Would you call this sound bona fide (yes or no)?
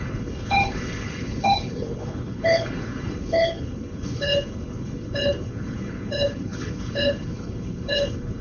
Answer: no